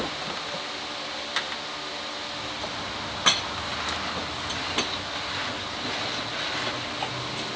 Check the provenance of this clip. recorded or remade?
recorded